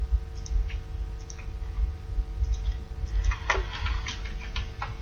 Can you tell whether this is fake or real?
real